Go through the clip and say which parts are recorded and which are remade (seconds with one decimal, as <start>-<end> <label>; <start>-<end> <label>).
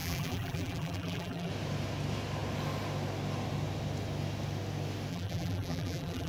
0.0-1.5 remade; 1.5-5.1 recorded; 5.1-6.3 remade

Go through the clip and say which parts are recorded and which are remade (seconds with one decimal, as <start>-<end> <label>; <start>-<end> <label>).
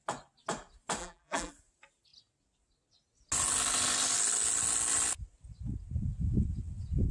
0.0-1.0 recorded; 1.0-1.5 remade; 1.5-7.1 recorded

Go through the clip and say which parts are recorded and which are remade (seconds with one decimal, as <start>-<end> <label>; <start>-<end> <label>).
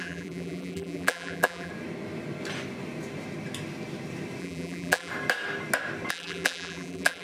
0.0-1.7 remade; 1.7-4.4 recorded; 4.4-5.1 remade; 5.1-6.1 recorded; 6.1-7.2 remade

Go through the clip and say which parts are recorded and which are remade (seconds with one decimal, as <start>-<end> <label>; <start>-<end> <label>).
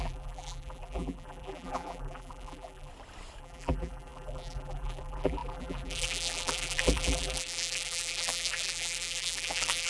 0.0-2.9 remade; 2.9-3.4 recorded; 3.4-9.9 remade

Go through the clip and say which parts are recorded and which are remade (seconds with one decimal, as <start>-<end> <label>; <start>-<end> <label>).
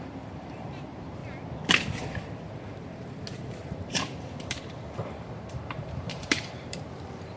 0.0-1.2 remade; 1.2-3.4 recorded; 3.4-7.4 remade